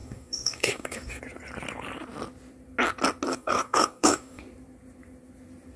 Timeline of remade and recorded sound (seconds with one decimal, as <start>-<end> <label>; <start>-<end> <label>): 0.0-1.2 remade; 1.2-3.3 recorded; 3.3-4.4 remade; 4.4-5.8 recorded